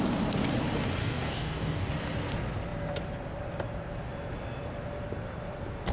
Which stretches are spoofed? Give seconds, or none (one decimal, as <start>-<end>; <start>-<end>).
1.0-1.9